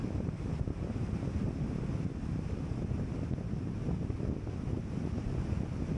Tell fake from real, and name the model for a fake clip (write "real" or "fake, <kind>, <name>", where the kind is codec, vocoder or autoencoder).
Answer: real